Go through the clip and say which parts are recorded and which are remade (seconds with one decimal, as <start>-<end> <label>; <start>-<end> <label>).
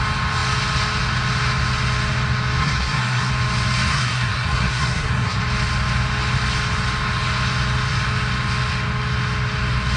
0.0-2.6 recorded; 2.6-3.3 remade; 3.3-3.9 recorded; 3.9-5.4 remade; 5.4-10.0 recorded